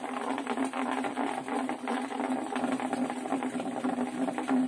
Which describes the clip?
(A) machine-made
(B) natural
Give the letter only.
B